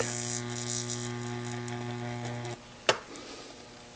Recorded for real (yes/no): yes